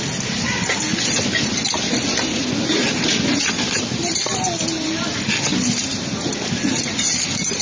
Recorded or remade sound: recorded